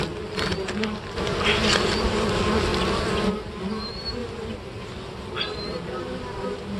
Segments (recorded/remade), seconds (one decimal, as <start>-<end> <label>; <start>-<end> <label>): 0.0-6.8 recorded